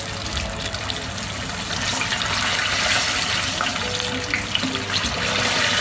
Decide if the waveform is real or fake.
real